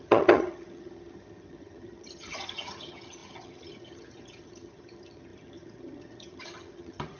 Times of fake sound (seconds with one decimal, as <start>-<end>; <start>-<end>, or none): 0.0-7.2